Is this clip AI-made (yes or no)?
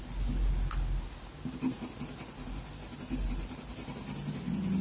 no